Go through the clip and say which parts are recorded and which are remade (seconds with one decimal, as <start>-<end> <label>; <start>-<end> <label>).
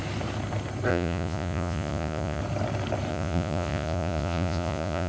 0.0-0.9 recorded; 0.9-2.4 remade; 2.4-3.1 recorded; 3.1-5.1 remade